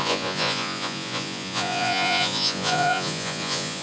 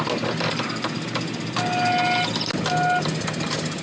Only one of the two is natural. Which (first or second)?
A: second